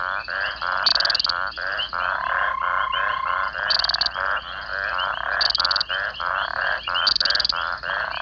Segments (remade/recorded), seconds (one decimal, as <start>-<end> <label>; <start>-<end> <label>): 0.0-8.2 recorded